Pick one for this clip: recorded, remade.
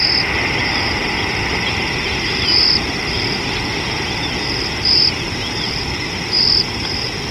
recorded